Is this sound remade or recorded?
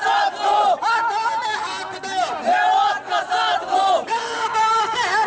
recorded